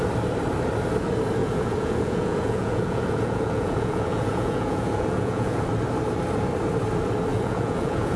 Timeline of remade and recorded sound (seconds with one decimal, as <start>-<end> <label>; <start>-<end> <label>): 0.0-1.4 recorded; 1.4-5.7 remade; 5.7-7.3 recorded; 7.3-8.2 remade